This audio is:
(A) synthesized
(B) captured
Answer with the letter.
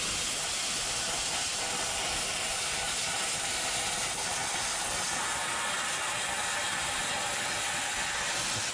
B